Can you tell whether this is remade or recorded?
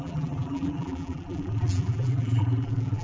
remade